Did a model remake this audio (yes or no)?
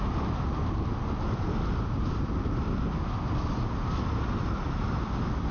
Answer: no